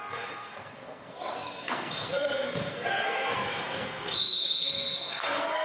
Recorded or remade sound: remade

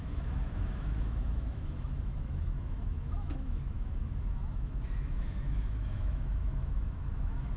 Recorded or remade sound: remade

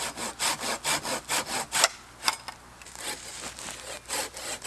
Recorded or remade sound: recorded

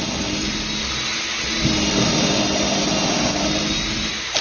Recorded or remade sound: recorded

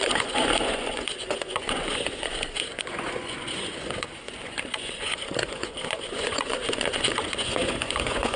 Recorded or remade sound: remade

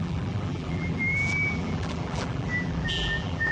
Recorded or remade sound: remade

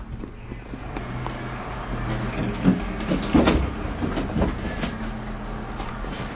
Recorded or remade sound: recorded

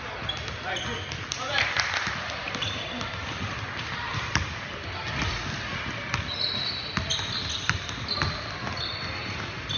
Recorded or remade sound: recorded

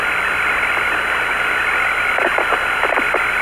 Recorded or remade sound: recorded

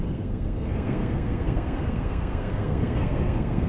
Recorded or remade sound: remade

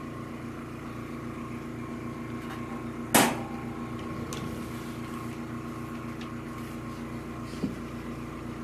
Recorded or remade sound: recorded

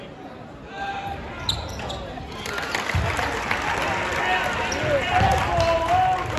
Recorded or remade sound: recorded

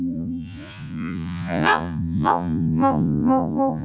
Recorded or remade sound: remade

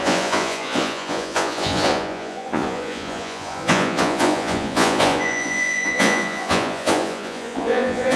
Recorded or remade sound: remade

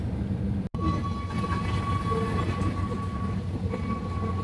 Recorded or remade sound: recorded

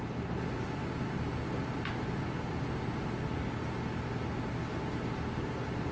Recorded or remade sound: recorded